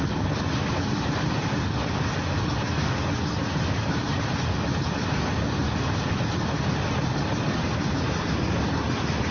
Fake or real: real